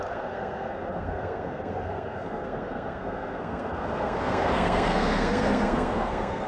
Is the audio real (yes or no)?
no